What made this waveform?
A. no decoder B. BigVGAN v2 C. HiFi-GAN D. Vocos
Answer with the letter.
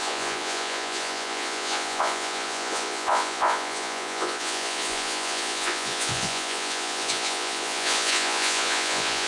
D